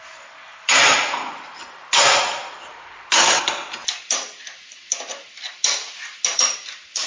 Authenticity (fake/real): real